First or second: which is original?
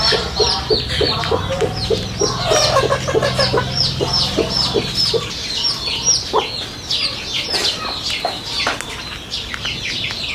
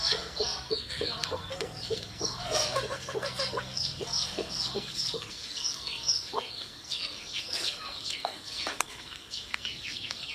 first